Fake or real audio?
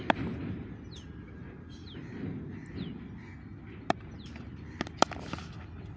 real